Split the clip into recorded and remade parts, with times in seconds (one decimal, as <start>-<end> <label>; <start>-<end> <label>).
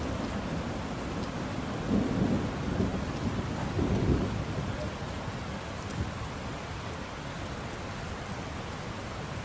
0.0-9.4 recorded